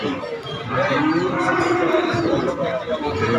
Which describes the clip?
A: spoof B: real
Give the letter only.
B